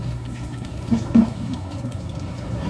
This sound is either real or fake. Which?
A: fake